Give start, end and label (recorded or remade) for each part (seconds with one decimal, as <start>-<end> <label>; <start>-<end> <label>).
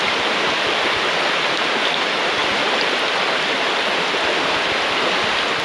0.0-5.6 recorded